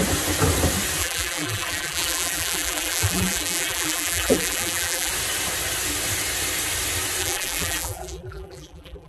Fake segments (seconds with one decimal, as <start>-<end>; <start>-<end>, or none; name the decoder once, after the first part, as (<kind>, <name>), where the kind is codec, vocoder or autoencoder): 1.0-5.1 (vocoder, BigVGAN v2); 7.2-9.1